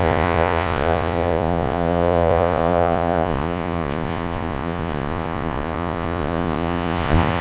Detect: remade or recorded remade